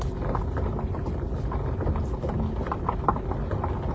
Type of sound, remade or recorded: recorded